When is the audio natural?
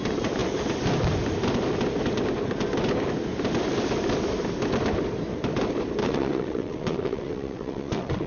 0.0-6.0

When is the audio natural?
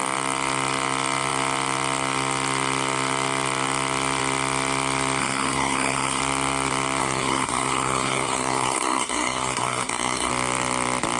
0.0-5.2; 6.2-7.0; 10.3-11.2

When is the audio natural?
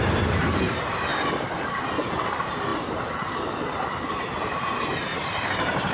1.1-1.8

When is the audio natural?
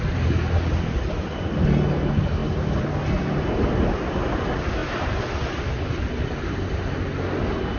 0.0-7.8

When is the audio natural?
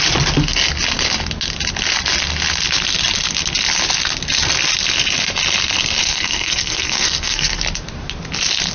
0.0-6.0; 7.6-8.7